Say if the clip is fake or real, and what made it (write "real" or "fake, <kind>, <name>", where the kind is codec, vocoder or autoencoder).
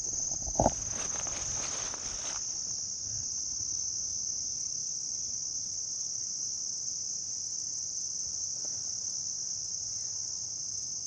real